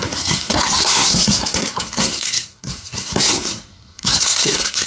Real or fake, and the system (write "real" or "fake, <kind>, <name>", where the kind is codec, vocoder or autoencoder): fake, codec, SNAC